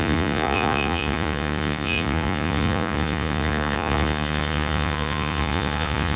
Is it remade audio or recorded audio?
remade